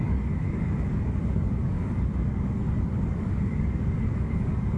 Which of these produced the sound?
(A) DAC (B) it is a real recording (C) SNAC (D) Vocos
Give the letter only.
A